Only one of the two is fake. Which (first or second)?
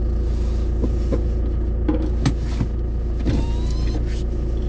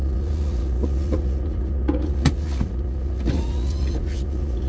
second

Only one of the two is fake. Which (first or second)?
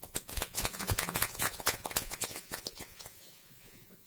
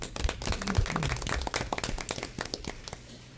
first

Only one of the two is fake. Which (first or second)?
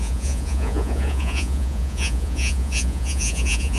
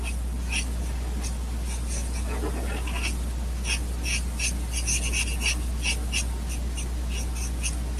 first